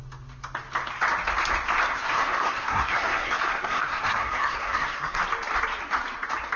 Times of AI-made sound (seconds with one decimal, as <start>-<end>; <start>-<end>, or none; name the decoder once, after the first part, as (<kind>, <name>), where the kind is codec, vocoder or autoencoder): 2.0-5.2 (codec, SNAC)